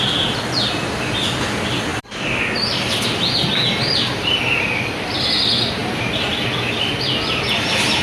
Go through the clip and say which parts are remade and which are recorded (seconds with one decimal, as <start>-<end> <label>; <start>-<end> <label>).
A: 0.0-8.0 recorded